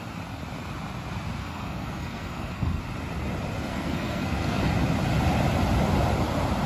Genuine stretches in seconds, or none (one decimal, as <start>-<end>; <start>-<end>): 0.0-1.4; 2.8-3.7; 4.6-6.7